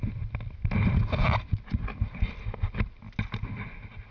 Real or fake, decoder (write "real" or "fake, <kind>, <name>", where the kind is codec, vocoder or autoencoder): real